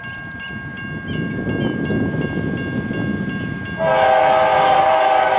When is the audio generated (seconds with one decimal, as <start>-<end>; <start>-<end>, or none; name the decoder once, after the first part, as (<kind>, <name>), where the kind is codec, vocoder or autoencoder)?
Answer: 4.5-5.4 (codec, DAC)